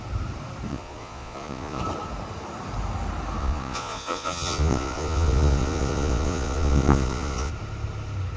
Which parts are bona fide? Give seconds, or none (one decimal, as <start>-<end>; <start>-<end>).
0.0-0.7; 1.8-3.4; 7.5-8.4